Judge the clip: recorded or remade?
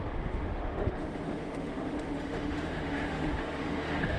remade